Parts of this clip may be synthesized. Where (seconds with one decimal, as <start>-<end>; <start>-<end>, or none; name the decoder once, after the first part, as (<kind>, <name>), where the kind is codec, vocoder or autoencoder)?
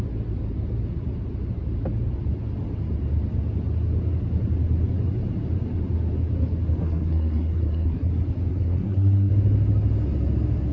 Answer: 6.8-8.1 (codec, SNAC); 8.5-9.3